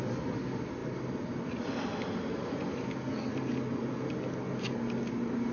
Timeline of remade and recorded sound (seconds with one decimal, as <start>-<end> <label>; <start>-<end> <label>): 0.0-5.5 recorded